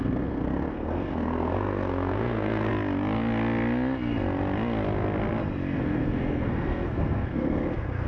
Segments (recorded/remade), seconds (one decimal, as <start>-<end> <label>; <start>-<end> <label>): 0.0-2.7 remade; 2.7-5.8 recorded; 5.8-8.1 remade